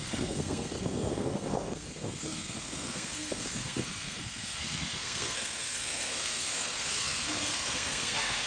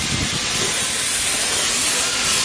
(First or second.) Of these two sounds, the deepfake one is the first